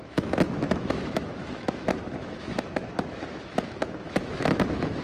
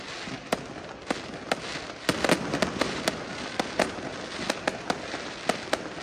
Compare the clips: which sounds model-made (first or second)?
first